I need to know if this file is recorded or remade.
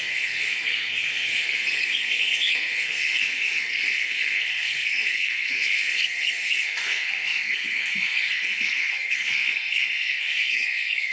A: remade